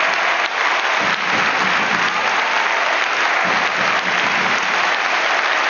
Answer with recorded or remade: recorded